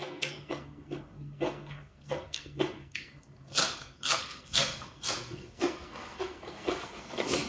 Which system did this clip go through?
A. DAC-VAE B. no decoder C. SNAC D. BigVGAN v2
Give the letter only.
C